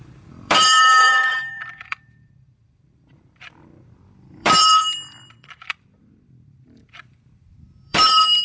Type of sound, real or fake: fake